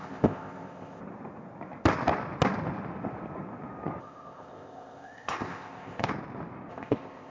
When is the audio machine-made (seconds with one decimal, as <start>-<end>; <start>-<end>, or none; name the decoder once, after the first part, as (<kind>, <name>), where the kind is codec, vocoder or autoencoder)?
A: 0.0-1.0 (codec, ZipCodec); 4.0-6.1; 6.7-7.3